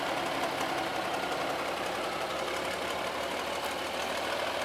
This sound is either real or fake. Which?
real